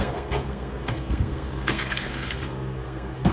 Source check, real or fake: fake